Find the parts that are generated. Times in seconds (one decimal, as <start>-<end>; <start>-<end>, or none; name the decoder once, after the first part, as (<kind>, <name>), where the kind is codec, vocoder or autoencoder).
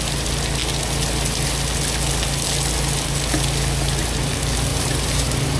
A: 4.7-5.6 (vocoder, BigVGAN v2)